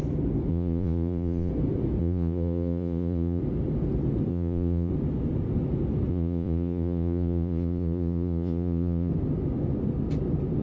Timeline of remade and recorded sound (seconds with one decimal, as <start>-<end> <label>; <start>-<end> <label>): 0.0-0.5 recorded; 0.5-1.5 remade; 1.5-2.0 recorded; 2.0-3.4 remade; 3.4-4.3 recorded; 4.3-4.9 remade; 4.9-6.1 recorded; 6.1-9.1 remade; 9.1-10.6 recorded